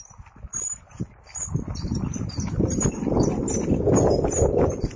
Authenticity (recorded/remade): recorded